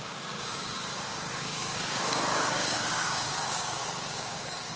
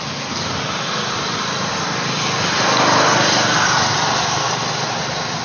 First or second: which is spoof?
first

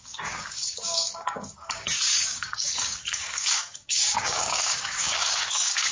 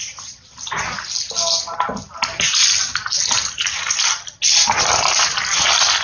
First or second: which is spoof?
first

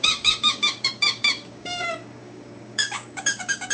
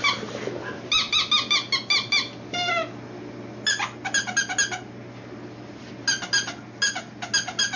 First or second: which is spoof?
first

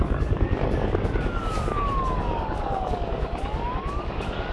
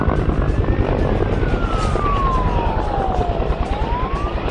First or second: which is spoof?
first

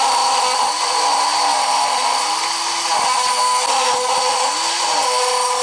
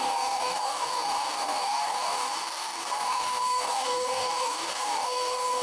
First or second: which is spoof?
second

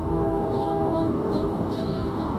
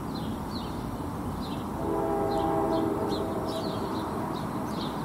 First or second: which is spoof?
first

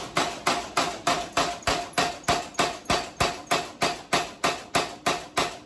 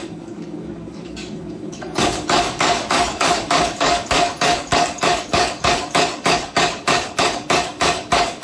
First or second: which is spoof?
second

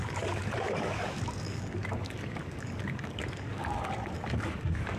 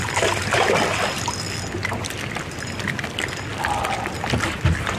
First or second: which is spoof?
first